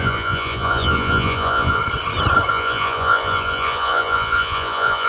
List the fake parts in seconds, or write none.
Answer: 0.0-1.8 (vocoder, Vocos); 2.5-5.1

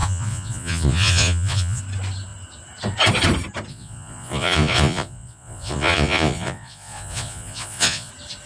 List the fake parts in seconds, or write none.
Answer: 0.0-1.8 (vocoder, Vocos); 3.7-8.1

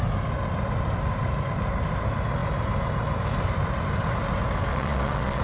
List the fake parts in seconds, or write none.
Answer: 4.7-5.4 (vocoder, Vocos)

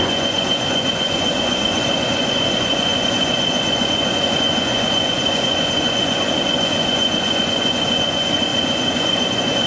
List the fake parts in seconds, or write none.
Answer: 0.0-9.7 (vocoder, Vocos)

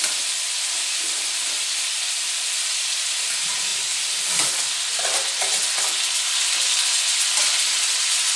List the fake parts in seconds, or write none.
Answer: none